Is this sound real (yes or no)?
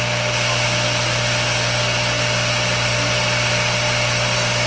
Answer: yes